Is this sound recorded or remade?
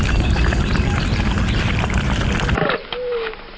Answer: recorded